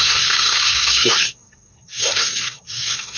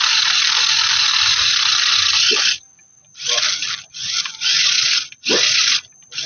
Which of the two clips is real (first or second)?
second